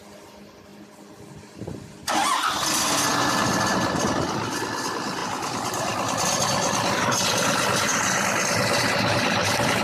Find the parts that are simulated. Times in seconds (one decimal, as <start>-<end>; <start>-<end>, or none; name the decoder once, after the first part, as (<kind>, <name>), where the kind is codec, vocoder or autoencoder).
0.0-5.2 (vocoder, BigVGAN v2); 6.9-7.9; 8.5-9.8